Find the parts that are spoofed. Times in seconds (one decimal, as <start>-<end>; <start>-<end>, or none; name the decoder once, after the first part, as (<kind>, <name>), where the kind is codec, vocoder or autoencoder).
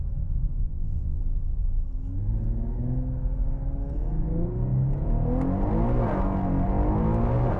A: 0.6-1.2 (vocoder, Vocos)